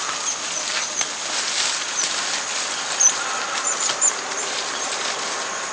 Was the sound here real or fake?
real